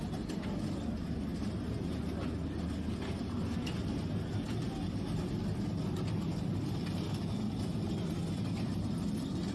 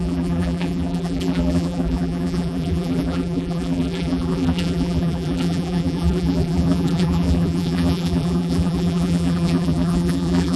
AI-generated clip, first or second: second